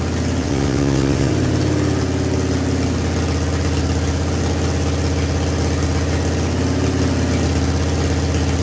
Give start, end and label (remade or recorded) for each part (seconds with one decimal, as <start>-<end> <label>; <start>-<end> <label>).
0.0-0.4 recorded; 0.4-1.3 remade; 1.3-8.6 recorded